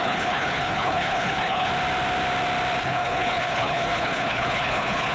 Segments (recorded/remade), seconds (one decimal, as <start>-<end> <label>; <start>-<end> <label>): 0.0-1.7 remade; 1.7-2.8 recorded; 2.8-5.1 remade